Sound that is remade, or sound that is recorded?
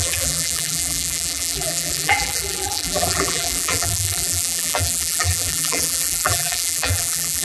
remade